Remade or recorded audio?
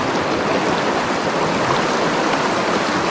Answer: recorded